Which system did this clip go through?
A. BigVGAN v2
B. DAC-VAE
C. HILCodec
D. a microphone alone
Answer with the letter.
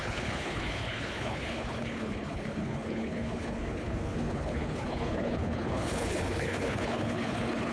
C